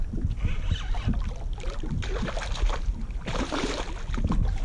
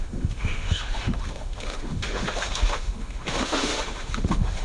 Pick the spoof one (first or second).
second